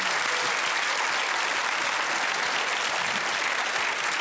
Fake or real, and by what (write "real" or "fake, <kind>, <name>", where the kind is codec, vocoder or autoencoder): real